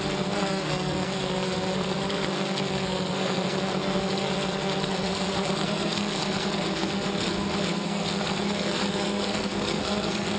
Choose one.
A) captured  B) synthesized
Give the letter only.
B